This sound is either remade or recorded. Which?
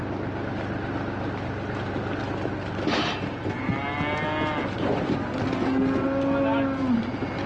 recorded